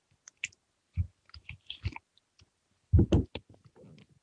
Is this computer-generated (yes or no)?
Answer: no